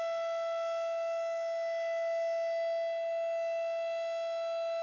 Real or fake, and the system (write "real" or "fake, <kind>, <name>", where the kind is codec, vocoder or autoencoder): real